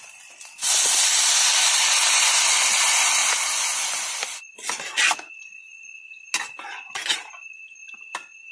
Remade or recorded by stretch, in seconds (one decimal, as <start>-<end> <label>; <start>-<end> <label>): 0.0-8.5 recorded